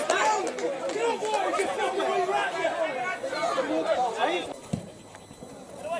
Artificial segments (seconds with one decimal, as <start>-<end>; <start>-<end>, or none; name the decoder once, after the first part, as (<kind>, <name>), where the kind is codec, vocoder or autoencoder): 0.0-0.9 (vocoder, BigVGAN v2); 4.5-6.0